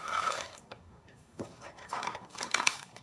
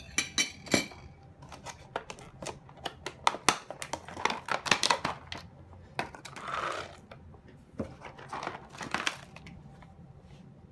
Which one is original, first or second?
second